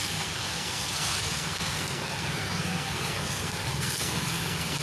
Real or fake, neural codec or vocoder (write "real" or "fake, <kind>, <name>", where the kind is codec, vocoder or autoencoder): fake, codec, SNAC